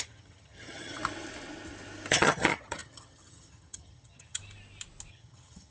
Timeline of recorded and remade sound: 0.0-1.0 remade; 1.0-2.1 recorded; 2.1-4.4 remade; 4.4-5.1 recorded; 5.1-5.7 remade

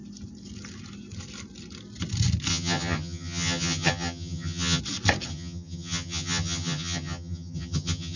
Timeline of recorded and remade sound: 0.0-2.5 recorded; 2.5-4.8 remade; 4.8-5.3 recorded; 5.3-8.2 remade

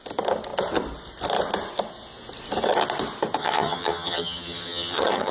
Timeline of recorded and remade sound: 0.0-3.4 recorded; 3.4-5.3 remade

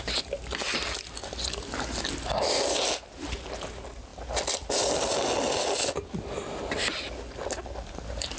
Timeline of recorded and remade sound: 0.0-8.4 recorded